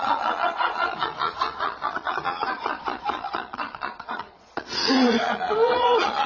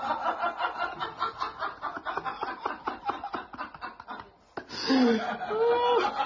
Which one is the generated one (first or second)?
first